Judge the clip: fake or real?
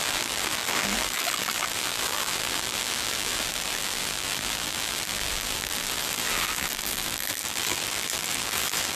fake